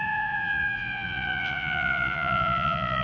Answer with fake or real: fake